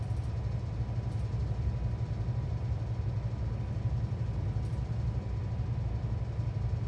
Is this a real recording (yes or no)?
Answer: yes